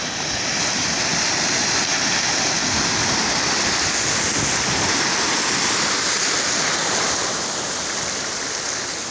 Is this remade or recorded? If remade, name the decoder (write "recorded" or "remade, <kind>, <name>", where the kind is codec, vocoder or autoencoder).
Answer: recorded